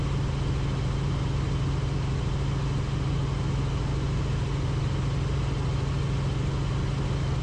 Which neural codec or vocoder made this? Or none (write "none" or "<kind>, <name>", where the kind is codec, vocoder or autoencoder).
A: none